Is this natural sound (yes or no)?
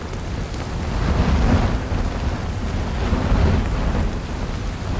yes